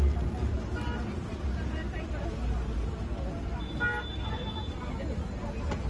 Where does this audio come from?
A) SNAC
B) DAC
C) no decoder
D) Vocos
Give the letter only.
C